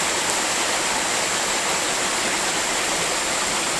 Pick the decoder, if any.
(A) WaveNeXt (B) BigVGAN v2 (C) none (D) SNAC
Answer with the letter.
B